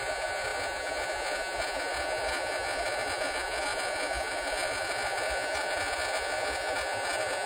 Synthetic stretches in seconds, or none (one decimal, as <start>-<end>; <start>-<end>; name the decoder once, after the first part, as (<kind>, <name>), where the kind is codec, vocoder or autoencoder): 0.0-7.5 (vocoder, Vocos)